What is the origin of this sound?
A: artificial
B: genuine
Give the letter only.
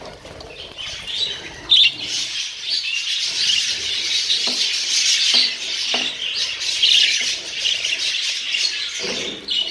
B